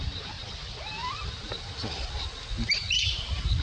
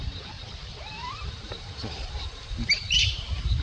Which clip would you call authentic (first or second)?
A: first